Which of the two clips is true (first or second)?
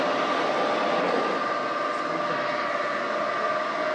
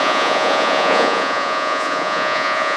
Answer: first